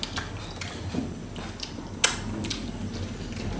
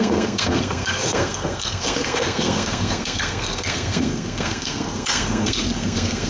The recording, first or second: first